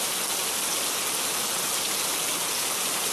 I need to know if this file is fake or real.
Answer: real